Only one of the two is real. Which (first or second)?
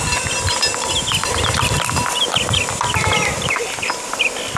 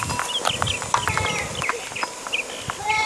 second